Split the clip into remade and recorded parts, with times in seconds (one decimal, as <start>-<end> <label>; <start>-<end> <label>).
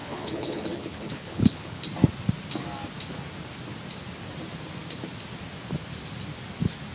0.0-1.8 remade; 1.8-6.9 recorded